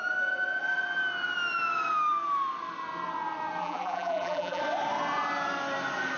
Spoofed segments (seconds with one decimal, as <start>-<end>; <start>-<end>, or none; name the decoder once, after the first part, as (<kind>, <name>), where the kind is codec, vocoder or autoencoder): 3.6-4.6 (vocoder, BigVGAN v2)

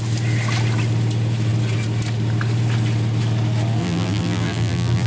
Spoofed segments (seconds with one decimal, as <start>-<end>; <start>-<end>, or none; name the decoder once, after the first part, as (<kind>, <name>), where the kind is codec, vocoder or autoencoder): 3.8-5.1 (vocoder, BigVGAN v2)

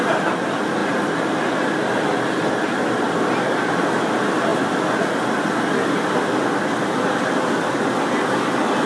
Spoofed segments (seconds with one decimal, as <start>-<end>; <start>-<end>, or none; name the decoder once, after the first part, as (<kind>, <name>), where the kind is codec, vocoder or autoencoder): none

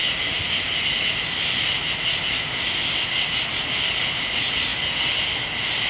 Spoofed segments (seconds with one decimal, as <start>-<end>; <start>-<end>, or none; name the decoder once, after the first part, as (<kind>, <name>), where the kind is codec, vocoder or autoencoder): none

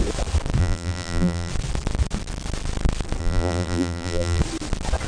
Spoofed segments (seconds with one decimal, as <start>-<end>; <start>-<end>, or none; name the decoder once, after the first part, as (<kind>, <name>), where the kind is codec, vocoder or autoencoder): 0.6-1.5 (vocoder, BigVGAN v2); 3.2-4.4

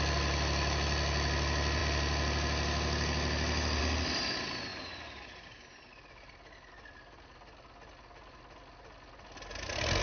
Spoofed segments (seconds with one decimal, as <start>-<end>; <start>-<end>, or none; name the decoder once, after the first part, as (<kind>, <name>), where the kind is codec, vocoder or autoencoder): none

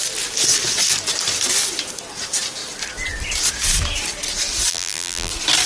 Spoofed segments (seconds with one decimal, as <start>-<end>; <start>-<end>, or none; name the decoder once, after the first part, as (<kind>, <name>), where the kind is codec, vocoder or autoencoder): 4.7-5.3 (vocoder, BigVGAN v2)